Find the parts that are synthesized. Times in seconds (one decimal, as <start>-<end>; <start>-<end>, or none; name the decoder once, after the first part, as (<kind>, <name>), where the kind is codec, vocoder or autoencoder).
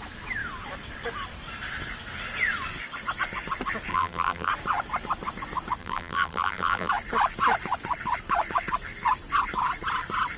3.9-4.5 (vocoder, BigVGAN v2); 5.8-6.9